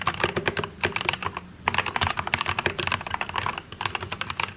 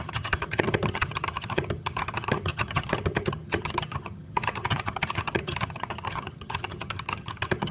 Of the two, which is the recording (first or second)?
first